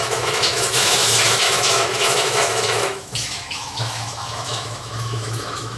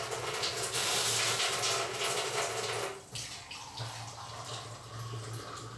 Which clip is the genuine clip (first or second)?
second